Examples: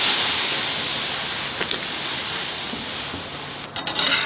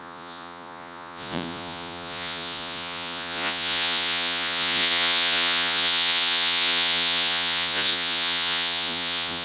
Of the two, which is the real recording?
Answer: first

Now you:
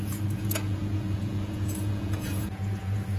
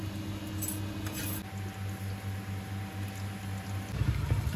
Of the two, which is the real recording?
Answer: second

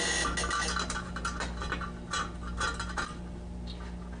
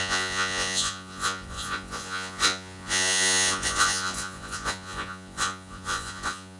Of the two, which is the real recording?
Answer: first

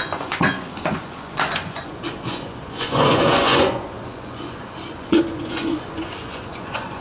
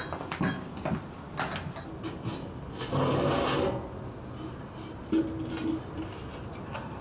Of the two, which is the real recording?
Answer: second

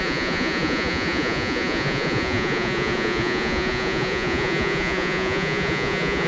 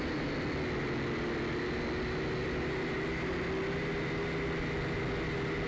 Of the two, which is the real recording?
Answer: second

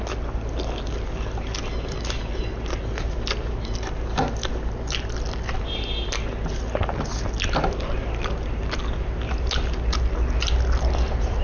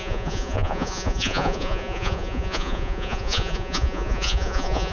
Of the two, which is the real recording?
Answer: first